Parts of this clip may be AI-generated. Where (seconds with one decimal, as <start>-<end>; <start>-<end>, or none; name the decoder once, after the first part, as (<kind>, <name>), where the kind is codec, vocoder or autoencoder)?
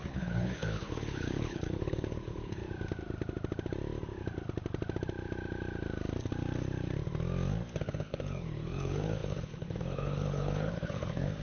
0.0-2.6 (codec, HILCodec); 7.8-11.4